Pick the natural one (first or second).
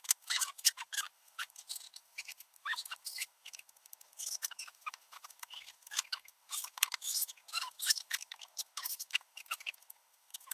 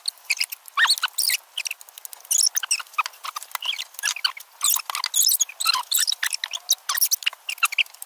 second